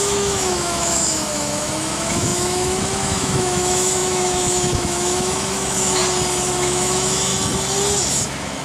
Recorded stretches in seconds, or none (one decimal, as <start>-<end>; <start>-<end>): 6.0-6.5; 7.3-8.1